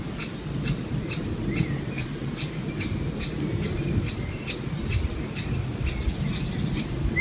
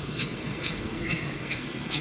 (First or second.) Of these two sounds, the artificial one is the second